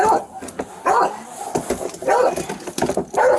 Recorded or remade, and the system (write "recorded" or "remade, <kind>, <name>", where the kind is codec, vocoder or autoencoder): recorded